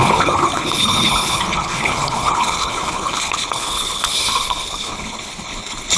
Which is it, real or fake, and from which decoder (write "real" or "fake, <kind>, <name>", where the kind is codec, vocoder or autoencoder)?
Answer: fake, codec, HILCodec